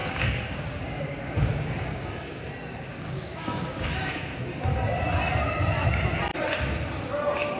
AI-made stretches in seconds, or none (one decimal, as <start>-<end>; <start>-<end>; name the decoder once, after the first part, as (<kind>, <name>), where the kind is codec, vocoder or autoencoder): 0.0-2.5 (codec, DAC); 2.9-4.4